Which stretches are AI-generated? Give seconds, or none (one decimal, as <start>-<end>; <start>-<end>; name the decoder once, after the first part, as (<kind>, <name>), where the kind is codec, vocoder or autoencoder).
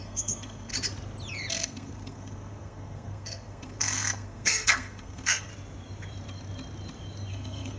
0.0-0.7 (codec, SNAC); 1.5-5.5; 7.3-7.8